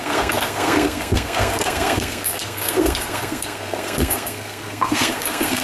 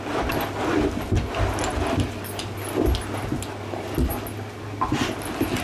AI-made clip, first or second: first